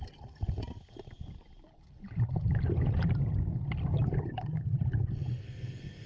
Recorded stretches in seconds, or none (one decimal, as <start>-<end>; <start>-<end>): 0.0-5.4